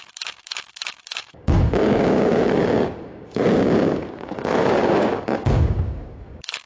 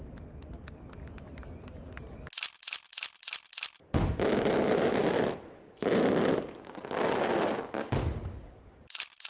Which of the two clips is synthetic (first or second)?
first